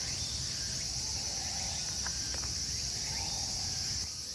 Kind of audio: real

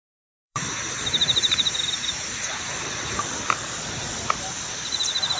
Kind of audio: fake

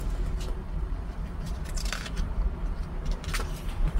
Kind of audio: fake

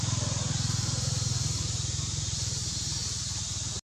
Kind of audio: real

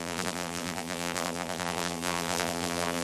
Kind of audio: fake